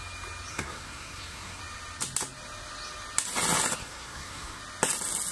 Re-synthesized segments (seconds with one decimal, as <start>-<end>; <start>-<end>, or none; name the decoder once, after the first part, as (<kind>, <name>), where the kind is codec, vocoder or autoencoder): 0.5-1.6 (codec, SNAC); 3.8-4.6